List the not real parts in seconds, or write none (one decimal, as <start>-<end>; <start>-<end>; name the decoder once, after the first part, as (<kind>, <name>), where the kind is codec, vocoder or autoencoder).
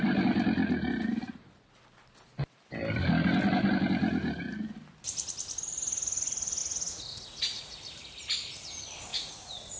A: 6.6-7.8 (vocoder, Vocos); 9.1-9.8